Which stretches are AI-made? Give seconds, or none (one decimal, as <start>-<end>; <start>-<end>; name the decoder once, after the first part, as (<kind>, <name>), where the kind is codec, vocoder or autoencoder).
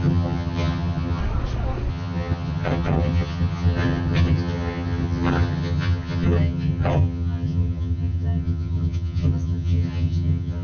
0.0-1.2 (vocoder, HiFi-GAN); 1.9-10.6